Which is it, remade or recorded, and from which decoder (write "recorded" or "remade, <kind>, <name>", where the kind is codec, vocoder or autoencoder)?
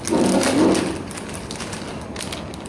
recorded